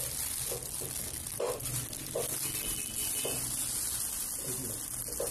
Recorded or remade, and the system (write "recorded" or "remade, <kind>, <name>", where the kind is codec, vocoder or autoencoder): recorded